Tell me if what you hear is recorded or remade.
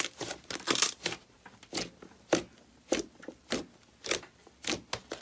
recorded